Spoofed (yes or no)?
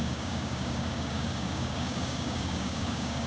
yes